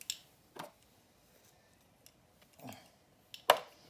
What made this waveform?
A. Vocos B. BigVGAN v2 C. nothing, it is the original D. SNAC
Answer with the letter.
C